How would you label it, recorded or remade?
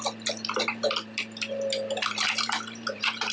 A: recorded